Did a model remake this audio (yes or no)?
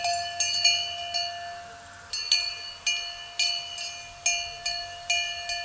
no